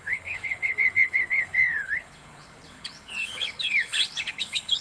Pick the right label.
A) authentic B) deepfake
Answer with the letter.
B